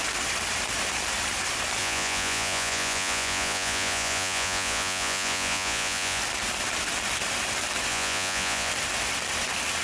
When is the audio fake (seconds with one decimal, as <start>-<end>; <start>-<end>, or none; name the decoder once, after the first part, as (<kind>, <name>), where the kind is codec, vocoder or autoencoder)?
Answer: 1.8-6.2 (vocoder, Vocos); 7.9-8.7